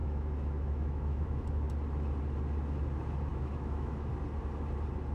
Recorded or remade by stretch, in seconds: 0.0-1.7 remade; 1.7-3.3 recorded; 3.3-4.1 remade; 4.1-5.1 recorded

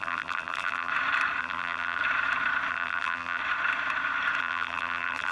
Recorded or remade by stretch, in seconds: 0.0-0.9 remade; 0.9-1.4 recorded; 1.4-2.0 remade; 2.0-2.7 recorded; 2.7-3.4 remade; 3.4-4.4 recorded; 4.4-5.3 remade